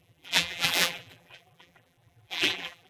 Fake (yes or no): yes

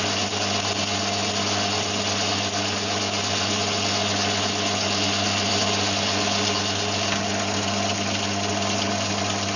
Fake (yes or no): no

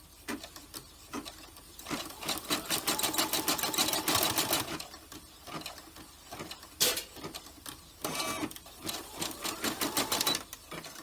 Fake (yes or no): no